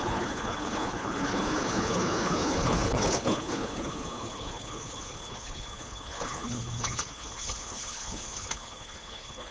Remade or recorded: remade